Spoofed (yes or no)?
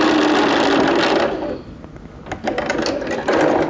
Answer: no